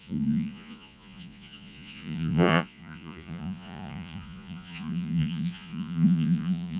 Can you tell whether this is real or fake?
fake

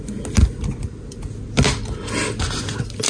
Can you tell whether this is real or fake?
real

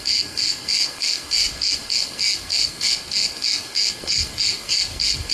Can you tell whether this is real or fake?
fake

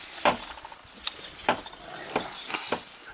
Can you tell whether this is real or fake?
real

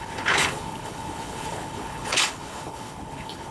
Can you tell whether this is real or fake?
fake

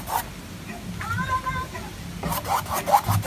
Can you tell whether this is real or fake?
real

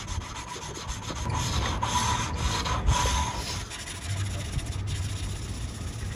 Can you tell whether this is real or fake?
real